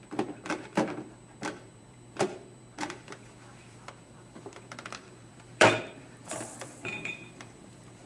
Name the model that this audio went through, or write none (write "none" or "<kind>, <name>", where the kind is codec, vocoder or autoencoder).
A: vocoder, BigVGAN v2